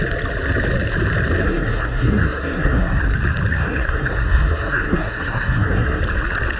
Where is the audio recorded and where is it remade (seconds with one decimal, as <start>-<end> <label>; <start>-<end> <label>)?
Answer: 0.0-1.4 recorded; 1.4-3.0 remade; 3.0-3.5 recorded; 3.5-6.0 remade; 6.0-6.6 recorded